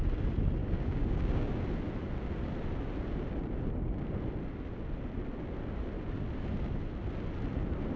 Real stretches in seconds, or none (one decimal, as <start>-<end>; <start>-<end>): 0.0-0.6; 1.5-8.0